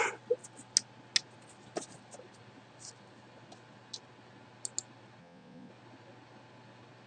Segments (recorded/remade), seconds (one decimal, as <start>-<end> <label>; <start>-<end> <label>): 0.0-5.2 recorded; 5.2-5.7 remade; 5.7-7.1 recorded